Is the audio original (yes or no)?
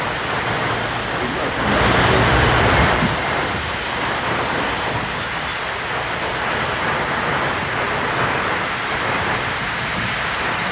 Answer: no